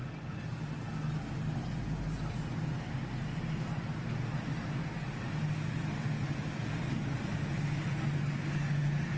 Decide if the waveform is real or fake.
real